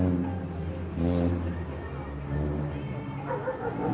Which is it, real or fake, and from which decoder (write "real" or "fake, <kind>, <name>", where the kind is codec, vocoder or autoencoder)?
real